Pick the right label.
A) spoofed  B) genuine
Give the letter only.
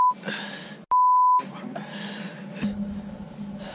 B